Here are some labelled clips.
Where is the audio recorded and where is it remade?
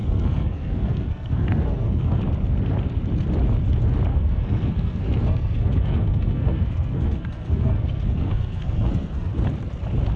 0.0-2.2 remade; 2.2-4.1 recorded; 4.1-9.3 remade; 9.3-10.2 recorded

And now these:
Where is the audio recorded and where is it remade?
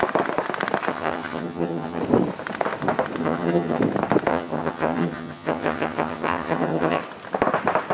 0.0-0.9 recorded; 0.9-2.0 remade; 2.0-3.2 recorded; 3.2-3.8 remade; 3.8-4.3 recorded; 4.3-7.0 remade; 7.0-7.9 recorded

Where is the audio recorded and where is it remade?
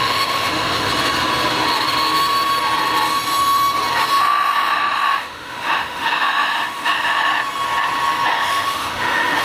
0.0-0.9 remade; 0.9-4.1 recorded; 4.1-7.3 remade; 7.3-8.3 recorded; 8.3-9.4 remade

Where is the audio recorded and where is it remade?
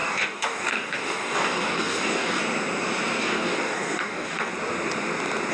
0.0-2.4 remade; 2.4-3.2 recorded; 3.2-4.5 remade; 4.5-5.5 recorded